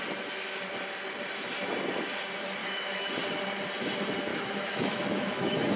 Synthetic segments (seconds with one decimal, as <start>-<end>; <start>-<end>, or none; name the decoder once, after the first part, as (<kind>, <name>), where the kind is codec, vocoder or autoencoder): 2.6-3.1 (autoencoder, DAC-VAE); 4.3-5.8